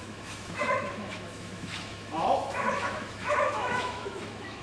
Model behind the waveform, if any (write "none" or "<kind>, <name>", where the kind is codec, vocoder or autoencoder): autoencoder, DAC-VAE